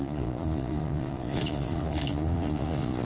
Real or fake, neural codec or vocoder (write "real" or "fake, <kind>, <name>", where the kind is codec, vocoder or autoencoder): fake, vocoder, Vocos